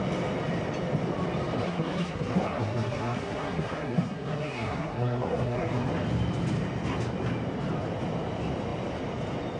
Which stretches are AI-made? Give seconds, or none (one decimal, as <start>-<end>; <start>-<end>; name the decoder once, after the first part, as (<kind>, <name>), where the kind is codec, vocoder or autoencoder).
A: 1.6-5.9 (codec, SNAC)